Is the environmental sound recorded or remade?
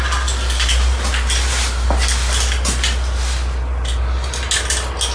recorded